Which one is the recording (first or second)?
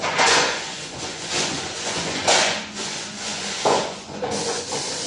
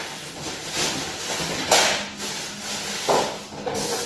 second